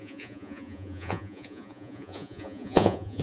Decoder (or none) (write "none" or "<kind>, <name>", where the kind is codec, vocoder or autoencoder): vocoder, Vocos